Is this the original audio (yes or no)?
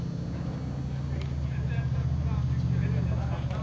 yes